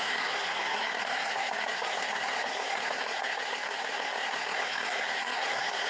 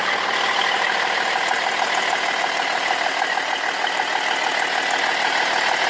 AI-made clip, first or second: first